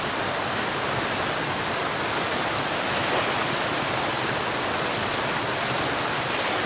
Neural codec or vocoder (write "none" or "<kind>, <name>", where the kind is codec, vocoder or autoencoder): none